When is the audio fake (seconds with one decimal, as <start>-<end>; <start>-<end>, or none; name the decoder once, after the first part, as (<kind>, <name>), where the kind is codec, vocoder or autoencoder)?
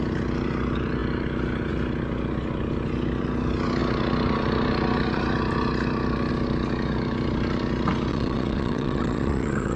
8.1-9.8 (vocoder, WaveNeXt)